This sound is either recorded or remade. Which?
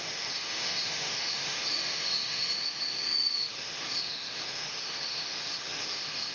remade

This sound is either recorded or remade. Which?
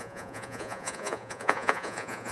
remade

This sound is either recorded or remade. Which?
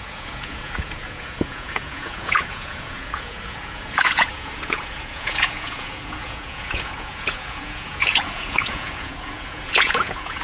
remade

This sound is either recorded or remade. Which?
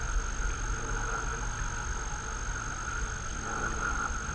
recorded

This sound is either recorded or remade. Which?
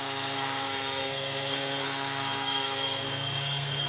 remade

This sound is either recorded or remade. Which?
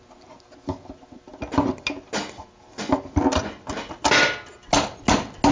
recorded